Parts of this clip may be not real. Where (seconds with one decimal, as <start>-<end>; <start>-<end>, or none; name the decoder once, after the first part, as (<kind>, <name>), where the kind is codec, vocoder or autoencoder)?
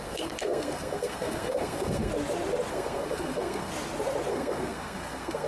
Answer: 0.0-2.1 (codec, SNAC); 2.7-3.7; 4.3-5.5